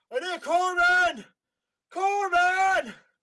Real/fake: real